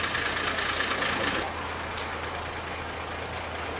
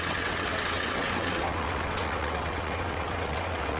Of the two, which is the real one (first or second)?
first